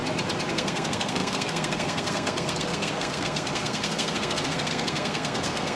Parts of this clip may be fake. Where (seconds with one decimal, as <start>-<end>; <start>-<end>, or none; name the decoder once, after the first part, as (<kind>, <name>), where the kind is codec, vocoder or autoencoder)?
0.5-5.8 (codec, SNAC)